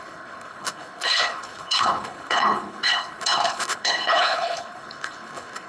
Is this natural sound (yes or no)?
no